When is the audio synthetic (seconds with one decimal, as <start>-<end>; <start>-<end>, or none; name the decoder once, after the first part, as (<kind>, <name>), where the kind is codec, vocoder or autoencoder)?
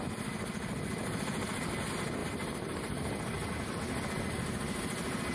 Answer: 2.2-3.5 (vocoder, BigVGAN v2)